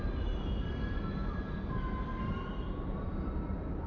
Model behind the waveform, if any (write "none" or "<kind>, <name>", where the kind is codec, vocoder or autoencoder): none